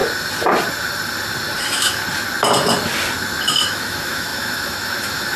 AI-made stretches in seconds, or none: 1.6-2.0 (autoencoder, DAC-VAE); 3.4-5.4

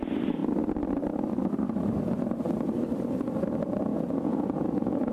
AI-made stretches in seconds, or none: 3.9-5.1 (vocoder, Vocos)

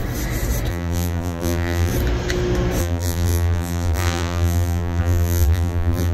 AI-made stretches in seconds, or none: 0.7-1.9 (vocoder, BigVGAN v2); 2.8-6.1

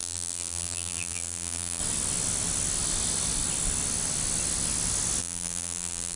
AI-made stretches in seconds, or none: 0.0-1.8 (vocoder, BigVGAN v2); 5.2-6.2

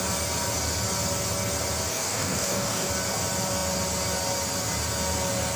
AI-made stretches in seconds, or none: 1.9-2.9 (codec, DAC)

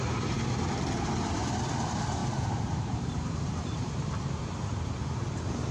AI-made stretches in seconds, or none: 2.2-5.7 (vocoder, BigVGAN v2)

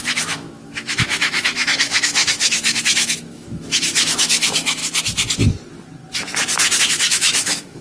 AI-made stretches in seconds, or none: 0.0-4.8 (autoencoder, DAC-VAE); 6.8-7.8

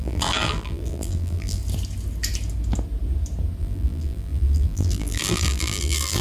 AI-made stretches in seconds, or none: 0.0-1.6 (vocoder, BigVGAN v2); 3.6-6.2